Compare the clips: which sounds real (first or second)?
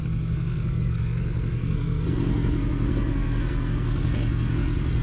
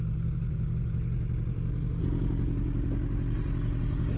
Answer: second